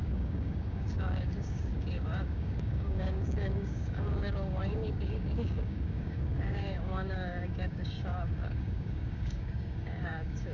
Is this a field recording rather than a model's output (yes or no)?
no